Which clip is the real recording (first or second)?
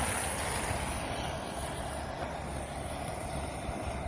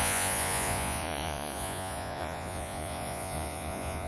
first